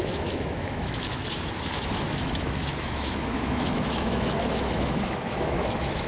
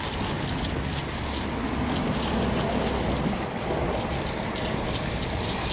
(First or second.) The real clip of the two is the second